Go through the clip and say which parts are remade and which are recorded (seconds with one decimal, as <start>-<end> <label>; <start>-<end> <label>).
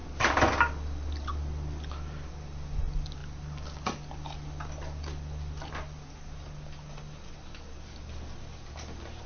0.0-9.3 recorded